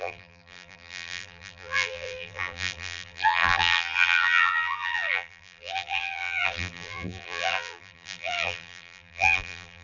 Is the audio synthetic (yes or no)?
yes